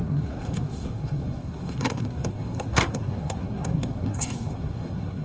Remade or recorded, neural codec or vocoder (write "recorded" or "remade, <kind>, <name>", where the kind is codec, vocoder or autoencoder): remade, codec, SNAC